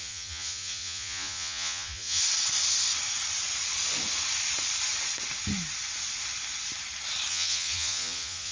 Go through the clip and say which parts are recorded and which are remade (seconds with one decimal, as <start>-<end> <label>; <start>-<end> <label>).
0.0-2.2 remade; 2.2-7.3 recorded; 7.3-8.5 remade